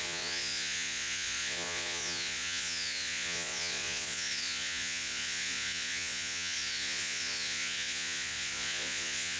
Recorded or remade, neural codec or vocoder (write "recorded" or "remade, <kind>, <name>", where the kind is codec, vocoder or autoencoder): remade, vocoder, Vocos